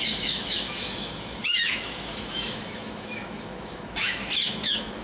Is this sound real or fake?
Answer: fake